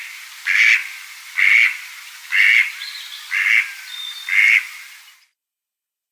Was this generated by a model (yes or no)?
no